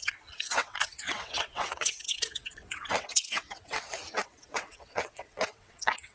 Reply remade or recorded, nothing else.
remade